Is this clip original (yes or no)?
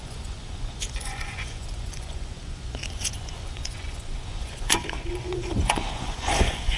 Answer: no